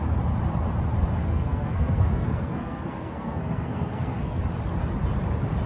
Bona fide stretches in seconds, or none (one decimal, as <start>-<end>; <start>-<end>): 0.0-1.2; 4.4-5.7